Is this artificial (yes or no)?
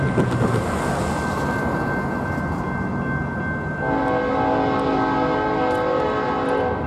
no